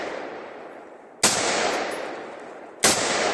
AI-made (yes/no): no